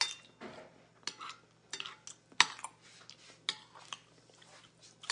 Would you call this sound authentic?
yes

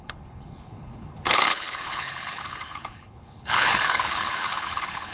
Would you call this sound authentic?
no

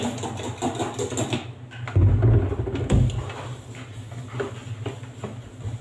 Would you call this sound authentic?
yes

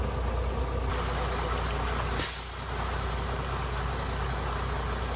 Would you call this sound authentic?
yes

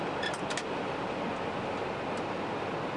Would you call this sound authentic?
yes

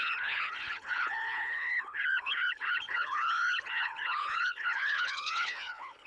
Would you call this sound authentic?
no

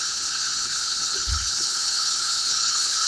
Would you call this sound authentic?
no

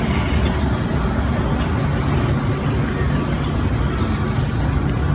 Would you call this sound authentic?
yes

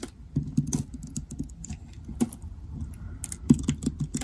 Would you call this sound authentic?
yes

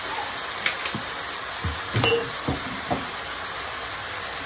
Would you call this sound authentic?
yes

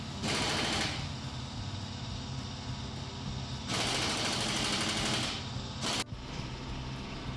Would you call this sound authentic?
yes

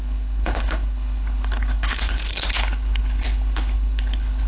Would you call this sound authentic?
no